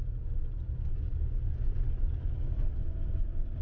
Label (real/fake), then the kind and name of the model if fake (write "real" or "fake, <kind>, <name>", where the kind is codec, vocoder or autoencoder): real